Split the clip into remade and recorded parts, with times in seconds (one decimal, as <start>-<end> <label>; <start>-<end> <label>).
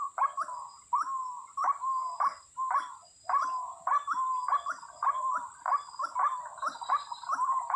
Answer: 0.0-1.6 recorded; 1.6-2.7 remade; 2.7-7.8 recorded